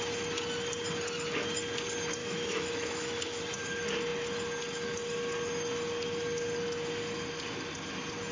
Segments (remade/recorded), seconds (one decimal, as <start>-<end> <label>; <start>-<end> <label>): 0.0-2.2 recorded; 2.2-3.4 remade; 3.4-8.3 recorded